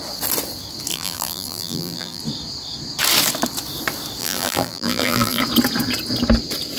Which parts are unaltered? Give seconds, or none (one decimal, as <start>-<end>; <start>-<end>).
0.0-0.9; 2.2-4.2; 5.4-6.8